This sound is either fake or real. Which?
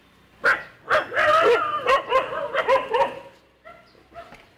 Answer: real